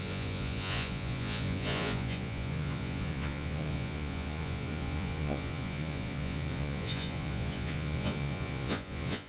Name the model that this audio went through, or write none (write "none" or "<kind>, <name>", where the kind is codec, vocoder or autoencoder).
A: vocoder, Vocos